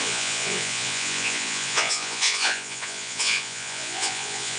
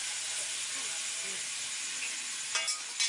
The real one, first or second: second